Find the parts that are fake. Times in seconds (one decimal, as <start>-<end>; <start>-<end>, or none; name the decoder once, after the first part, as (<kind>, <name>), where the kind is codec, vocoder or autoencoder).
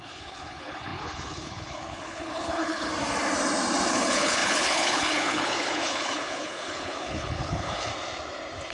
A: 0.0-2.9 (codec, HILCodec); 3.9-7.9